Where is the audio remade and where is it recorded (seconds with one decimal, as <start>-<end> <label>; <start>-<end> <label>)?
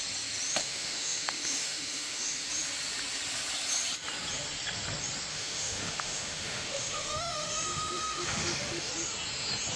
0.0-0.6 recorded; 0.6-2.5 remade; 2.5-5.3 recorded; 5.3-8.9 remade; 8.9-9.8 recorded